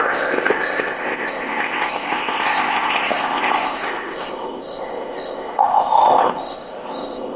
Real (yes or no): no